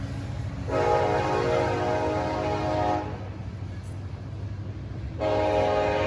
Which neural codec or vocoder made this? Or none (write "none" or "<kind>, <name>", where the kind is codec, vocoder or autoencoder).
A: none